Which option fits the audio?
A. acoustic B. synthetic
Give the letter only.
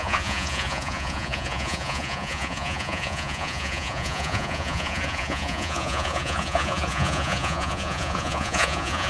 B